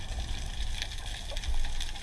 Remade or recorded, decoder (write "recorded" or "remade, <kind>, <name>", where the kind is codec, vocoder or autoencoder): recorded